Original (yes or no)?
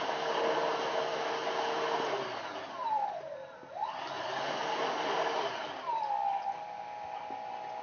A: yes